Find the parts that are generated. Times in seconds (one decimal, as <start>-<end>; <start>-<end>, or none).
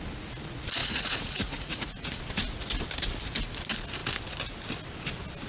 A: 0.8-2.2